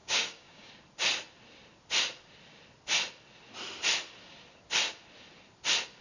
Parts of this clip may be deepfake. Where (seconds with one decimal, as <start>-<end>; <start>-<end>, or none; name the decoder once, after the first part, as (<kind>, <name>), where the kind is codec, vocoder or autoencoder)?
0.0-0.7 (codec, DAC)